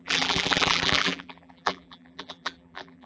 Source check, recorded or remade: remade